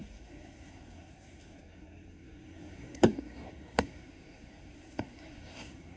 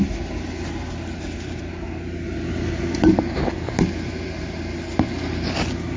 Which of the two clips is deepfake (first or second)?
first